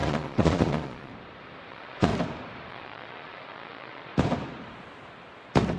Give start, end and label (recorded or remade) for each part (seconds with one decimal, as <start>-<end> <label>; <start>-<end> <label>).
0.0-1.1 remade; 1.1-1.7 recorded; 1.7-2.1 remade; 2.1-2.7 recorded; 2.7-4.1 remade; 4.1-5.8 recorded